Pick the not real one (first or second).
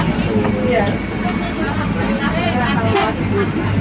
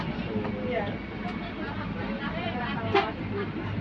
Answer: second